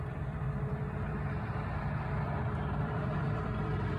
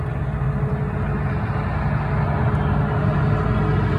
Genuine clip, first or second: second